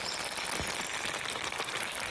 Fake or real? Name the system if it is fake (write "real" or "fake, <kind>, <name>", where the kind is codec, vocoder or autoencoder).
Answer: real